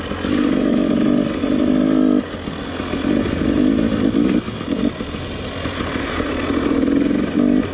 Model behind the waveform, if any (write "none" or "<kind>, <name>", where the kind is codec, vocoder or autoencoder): none